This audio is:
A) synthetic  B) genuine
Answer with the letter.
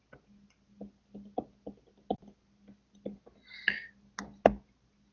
B